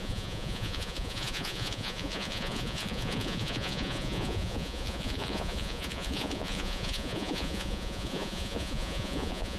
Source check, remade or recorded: remade